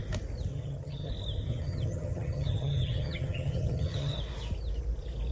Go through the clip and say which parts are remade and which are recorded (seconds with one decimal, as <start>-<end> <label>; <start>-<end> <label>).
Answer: 0.0-0.5 recorded; 0.5-1.1 remade; 1.1-1.5 recorded; 1.5-4.2 remade; 4.2-5.3 recorded